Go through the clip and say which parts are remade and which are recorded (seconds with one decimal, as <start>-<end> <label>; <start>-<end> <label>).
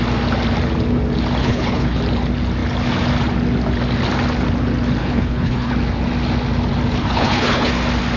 0.0-1.4 recorded; 1.4-2.0 remade; 2.0-5.0 recorded; 5.0-5.7 remade; 5.7-7.0 recorded; 7.0-7.7 remade; 7.7-8.2 recorded